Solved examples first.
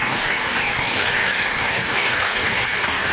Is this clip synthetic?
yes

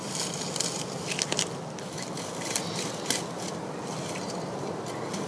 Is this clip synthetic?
no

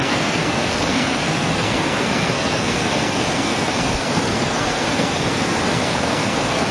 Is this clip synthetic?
yes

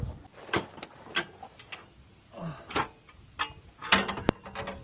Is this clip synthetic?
no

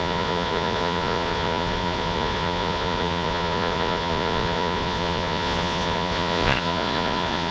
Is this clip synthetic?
yes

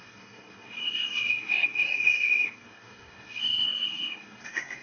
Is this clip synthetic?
yes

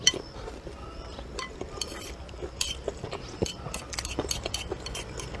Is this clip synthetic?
no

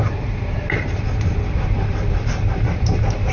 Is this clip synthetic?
yes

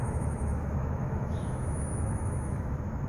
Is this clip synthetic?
yes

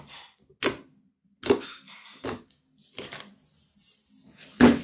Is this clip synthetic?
no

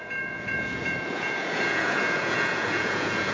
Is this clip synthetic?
yes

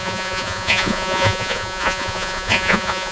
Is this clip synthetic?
yes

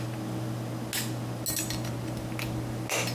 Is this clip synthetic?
no